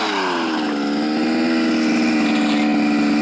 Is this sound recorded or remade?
recorded